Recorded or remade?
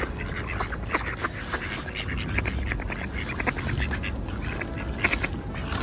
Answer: recorded